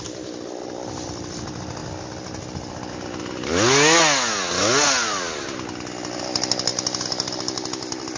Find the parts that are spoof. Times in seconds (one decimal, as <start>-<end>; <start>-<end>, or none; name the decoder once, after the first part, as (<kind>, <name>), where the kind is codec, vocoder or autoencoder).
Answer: none